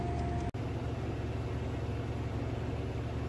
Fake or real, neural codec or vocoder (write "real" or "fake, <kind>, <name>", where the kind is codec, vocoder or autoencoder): real